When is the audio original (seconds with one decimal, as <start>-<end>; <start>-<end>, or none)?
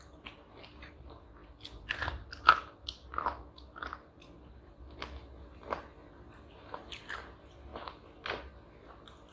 0.0-9.3